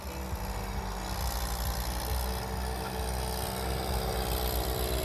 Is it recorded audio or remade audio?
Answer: recorded